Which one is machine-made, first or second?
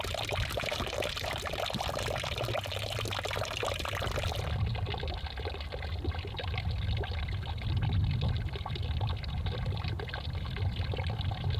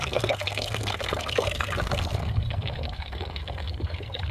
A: second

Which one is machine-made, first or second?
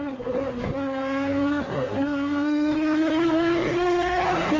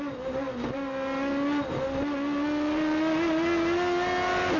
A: first